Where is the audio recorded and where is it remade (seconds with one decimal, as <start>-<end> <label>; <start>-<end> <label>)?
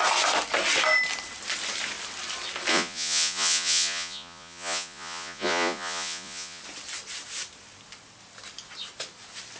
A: 0.0-2.7 recorded; 2.7-6.6 remade; 6.6-9.6 recorded